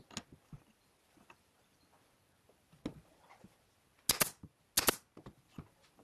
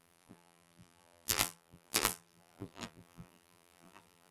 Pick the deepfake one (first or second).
second